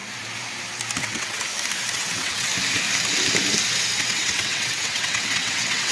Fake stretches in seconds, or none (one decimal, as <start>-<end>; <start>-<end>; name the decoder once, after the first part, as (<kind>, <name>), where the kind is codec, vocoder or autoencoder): 1.0-1.4 (vocoder, WaveNeXt); 1.9-2.5; 4.0-5.9